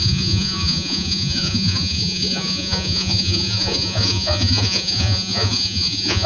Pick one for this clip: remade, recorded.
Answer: remade